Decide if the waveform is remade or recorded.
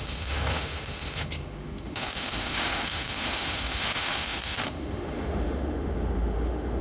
remade